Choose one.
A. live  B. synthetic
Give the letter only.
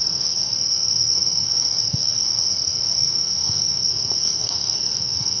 B